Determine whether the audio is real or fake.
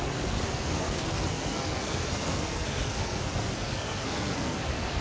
fake